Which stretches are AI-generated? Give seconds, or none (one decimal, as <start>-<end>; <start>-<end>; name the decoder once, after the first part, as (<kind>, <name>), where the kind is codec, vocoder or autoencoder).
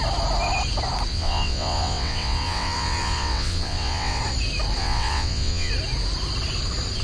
1.1-4.2 (vocoder, WaveNeXt); 4.8-5.7